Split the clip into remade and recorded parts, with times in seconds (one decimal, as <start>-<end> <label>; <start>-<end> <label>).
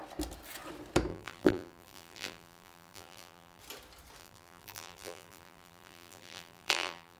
0.0-1.1 recorded; 1.1-3.6 remade; 3.6-4.2 recorded; 4.2-7.2 remade